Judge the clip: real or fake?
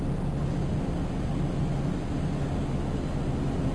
real